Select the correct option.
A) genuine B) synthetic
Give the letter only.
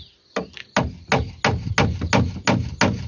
A